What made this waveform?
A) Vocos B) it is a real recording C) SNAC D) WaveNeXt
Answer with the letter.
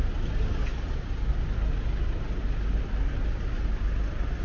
B